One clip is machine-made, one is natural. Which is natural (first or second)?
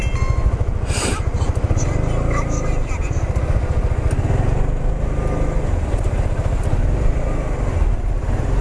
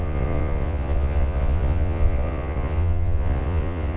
first